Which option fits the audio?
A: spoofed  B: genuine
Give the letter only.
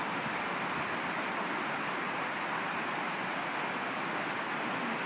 B